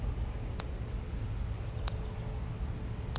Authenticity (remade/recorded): recorded